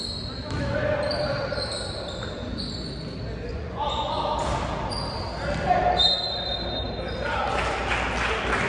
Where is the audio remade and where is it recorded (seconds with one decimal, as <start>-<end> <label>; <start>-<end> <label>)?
0.0-3.5 recorded; 3.5-4.1 remade; 4.1-8.7 recorded